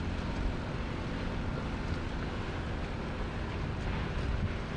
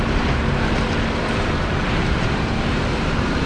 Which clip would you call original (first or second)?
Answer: first